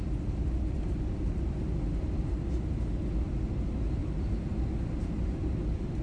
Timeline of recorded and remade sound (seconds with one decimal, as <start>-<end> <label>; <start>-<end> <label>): 0.0-4.0 recorded; 4.0-4.9 remade; 4.9-6.0 recorded